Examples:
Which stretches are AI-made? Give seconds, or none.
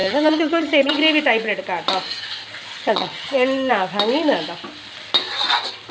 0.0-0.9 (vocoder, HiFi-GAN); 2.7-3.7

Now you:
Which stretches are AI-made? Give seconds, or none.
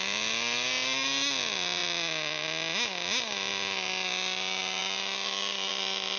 none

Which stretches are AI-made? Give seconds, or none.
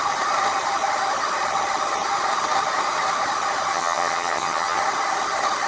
3.7-4.8 (vocoder, HiFi-GAN)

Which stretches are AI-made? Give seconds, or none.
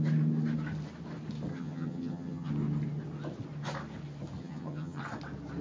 1.5-2.5 (vocoder, HiFi-GAN); 4.4-5.0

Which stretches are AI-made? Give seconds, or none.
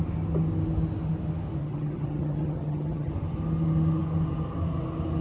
1.6-3.1 (vocoder, HiFi-GAN)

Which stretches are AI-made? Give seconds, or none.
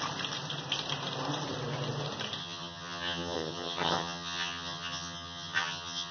2.4-6.1 (vocoder, HiFi-GAN)